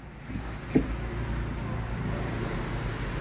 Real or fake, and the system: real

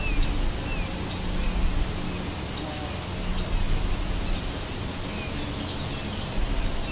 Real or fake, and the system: real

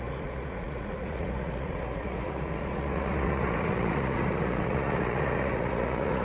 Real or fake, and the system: fake, vocoder, Vocos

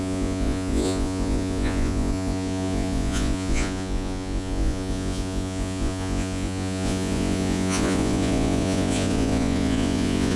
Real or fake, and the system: fake, vocoder, Vocos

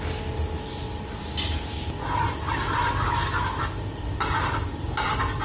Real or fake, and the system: real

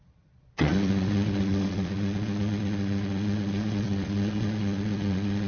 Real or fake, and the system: fake, vocoder, Vocos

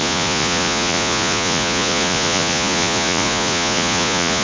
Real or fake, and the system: fake, vocoder, Vocos